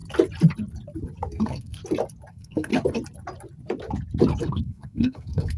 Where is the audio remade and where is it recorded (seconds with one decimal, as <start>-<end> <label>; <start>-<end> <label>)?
0.0-1.3 recorded; 1.3-1.8 remade; 1.8-2.3 recorded; 2.3-2.7 remade; 2.7-4.4 recorded; 4.4-5.6 remade